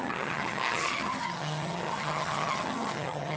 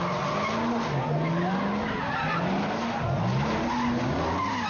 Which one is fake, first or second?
first